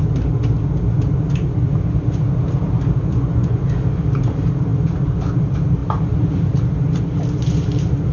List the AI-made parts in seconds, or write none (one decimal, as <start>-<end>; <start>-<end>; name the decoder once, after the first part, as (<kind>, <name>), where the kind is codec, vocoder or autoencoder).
3.1-3.6 (vocoder, Vocos)